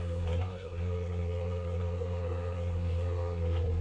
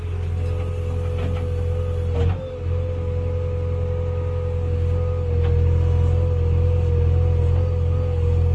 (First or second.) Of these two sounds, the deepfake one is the first